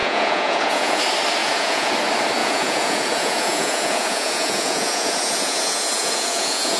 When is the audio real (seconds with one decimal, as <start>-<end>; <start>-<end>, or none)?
1.0-1.4; 1.9-2.4